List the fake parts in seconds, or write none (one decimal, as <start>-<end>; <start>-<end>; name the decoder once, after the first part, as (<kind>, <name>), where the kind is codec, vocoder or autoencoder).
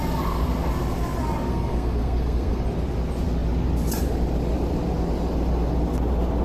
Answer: 1.5-2.6 (codec, SNAC)